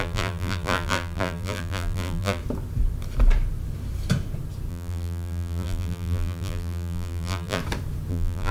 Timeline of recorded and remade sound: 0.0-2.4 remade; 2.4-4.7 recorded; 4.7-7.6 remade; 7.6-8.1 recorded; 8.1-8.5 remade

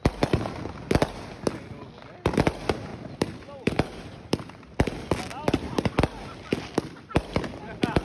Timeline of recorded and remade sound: 0.0-2.9 recorded; 2.9-5.2 remade; 5.2-8.0 recorded

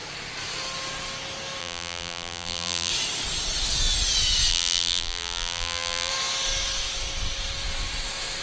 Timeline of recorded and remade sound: 0.0-1.6 recorded; 1.6-2.9 remade; 2.9-4.5 recorded; 4.5-6.1 remade; 6.1-8.4 recorded

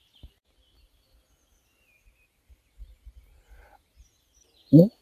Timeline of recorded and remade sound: 0.0-5.0 recorded

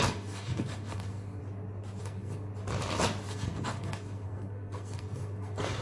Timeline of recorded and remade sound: 0.0-1.4 remade; 1.4-2.0 recorded; 2.0-2.5 remade; 2.5-3.3 recorded; 3.3-5.8 remade

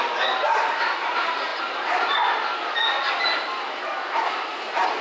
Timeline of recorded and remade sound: 0.0-5.0 recorded